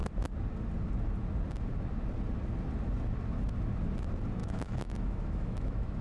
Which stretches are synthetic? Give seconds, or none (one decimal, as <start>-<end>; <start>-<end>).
4.4-6.0